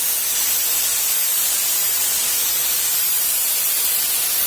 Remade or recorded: recorded